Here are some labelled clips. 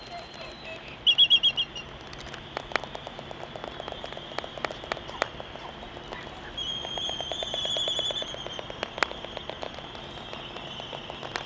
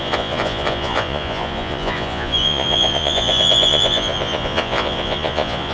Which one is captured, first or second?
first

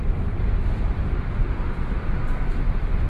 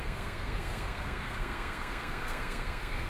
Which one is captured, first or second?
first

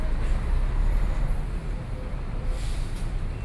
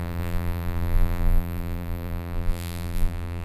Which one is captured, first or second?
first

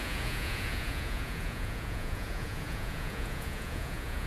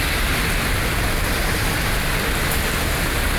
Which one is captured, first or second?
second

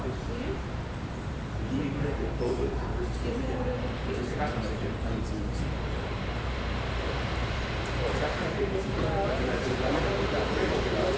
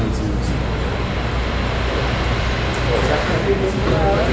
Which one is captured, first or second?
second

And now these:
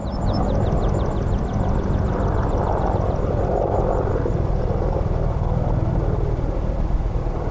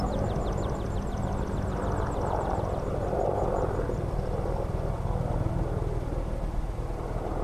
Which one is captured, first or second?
second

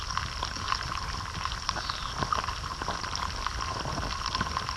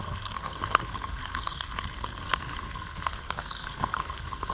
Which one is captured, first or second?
first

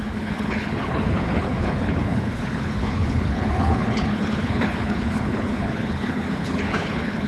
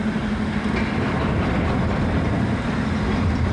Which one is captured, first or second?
second